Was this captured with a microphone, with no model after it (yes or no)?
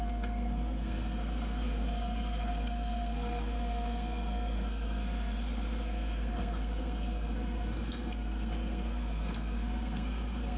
no